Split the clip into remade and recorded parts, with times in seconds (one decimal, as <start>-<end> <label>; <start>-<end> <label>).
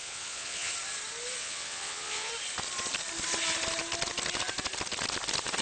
0.0-0.7 remade; 0.7-1.4 recorded; 1.4-2.3 remade; 2.3-5.6 recorded